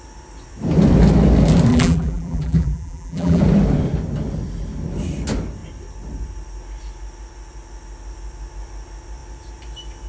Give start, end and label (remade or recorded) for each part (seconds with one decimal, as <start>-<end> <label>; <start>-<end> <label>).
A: 0.0-1.7 recorded; 1.7-3.4 remade; 3.4-10.1 recorded